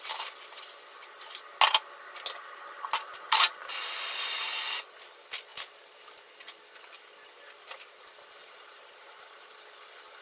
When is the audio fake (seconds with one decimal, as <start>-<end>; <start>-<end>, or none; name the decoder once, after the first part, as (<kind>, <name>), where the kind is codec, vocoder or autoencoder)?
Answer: 5.5-6.4 (vocoder, BigVGAN v2); 8.4-9.6